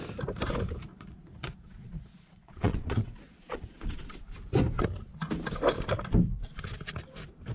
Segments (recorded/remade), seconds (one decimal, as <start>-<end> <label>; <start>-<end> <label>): 0.0-0.9 recorded; 0.9-4.1 remade; 4.1-7.5 recorded